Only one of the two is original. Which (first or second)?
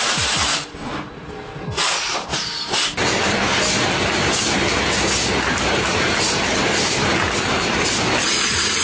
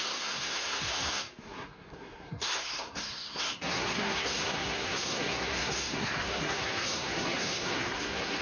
first